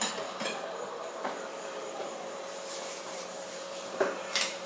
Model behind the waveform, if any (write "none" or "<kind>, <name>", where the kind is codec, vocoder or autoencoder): vocoder, BigVGAN v2